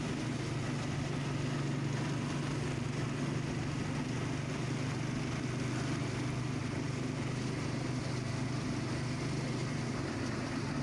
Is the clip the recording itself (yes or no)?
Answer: yes